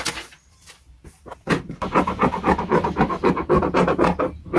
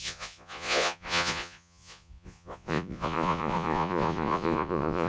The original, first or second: first